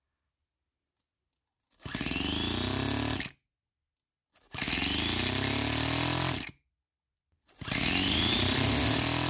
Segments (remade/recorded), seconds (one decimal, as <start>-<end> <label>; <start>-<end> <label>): 0.0-9.3 recorded